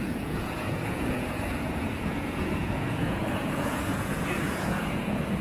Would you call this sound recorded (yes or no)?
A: no